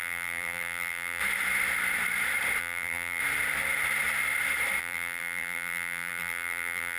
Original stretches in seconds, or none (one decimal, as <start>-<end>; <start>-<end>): 1.2-2.6; 3.2-4.8